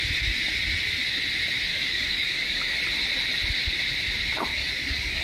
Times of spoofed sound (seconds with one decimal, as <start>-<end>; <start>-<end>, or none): 1.7-2.8; 4.5-5.2